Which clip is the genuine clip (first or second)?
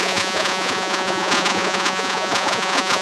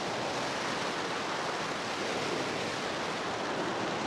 second